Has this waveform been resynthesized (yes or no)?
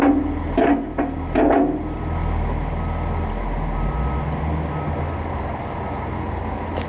no